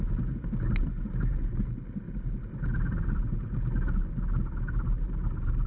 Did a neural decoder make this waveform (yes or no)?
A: no